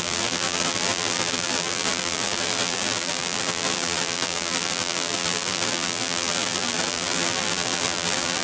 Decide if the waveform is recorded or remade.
remade